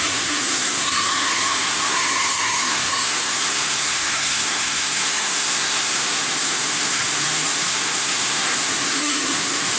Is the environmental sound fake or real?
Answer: fake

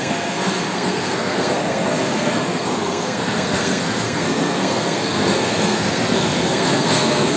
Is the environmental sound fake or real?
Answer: fake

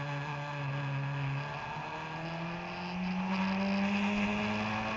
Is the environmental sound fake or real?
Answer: real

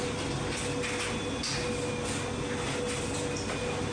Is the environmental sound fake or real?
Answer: real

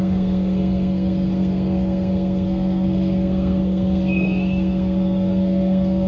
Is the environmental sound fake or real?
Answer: fake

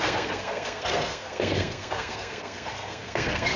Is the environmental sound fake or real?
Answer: fake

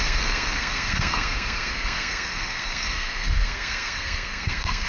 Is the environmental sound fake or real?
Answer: fake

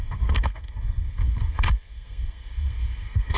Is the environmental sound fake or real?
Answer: fake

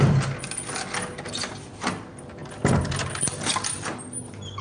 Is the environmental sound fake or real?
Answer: real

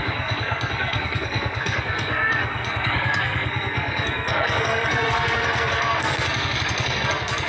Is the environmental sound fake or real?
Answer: fake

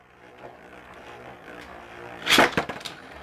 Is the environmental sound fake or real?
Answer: real